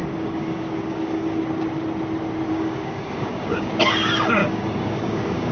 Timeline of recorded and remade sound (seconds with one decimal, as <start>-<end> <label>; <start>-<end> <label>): 0.0-1.4 remade; 1.4-2.5 recorded; 2.5-3.7 remade; 3.7-4.4 recorded; 4.4-5.5 remade

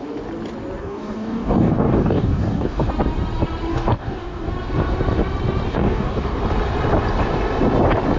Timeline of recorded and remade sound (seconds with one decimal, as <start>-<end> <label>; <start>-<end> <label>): 0.0-0.8 recorded; 0.8-2.9 remade; 2.9-3.7 recorded; 3.7-4.5 remade; 4.5-5.7 recorded; 5.7-6.4 remade; 6.4-8.2 recorded

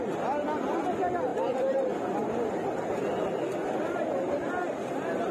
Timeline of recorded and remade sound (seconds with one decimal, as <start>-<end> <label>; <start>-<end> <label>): 0.0-5.3 recorded

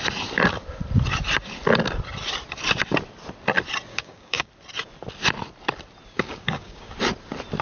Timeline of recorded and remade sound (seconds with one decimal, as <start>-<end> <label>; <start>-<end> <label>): 0.0-3.9 recorded; 3.9-4.5 remade; 4.5-6.1 recorded; 6.1-6.9 remade; 6.9-7.6 recorded